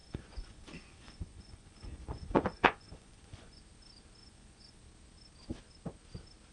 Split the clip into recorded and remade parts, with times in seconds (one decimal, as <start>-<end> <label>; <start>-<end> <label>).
0.0-3.6 remade; 3.6-4.2 recorded; 4.2-4.8 remade; 4.8-6.5 recorded